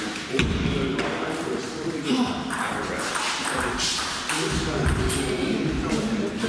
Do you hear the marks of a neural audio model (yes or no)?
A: no